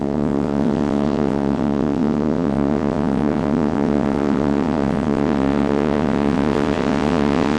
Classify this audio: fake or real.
fake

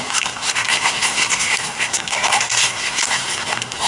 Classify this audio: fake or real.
fake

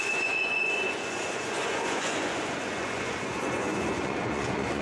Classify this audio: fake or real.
fake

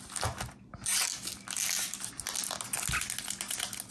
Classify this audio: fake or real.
real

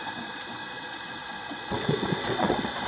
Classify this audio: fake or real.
fake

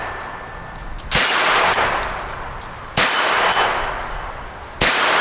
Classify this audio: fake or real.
real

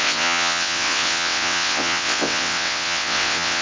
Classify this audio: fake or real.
fake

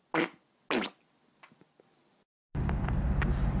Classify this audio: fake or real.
real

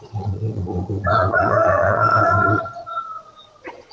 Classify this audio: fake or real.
fake